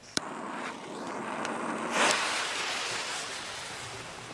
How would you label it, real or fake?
fake